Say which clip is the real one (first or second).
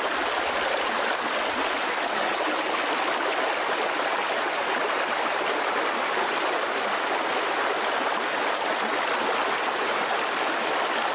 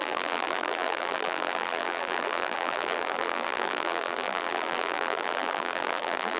first